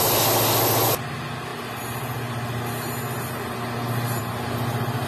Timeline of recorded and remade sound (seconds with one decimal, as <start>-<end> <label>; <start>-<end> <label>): 0.0-5.1 recorded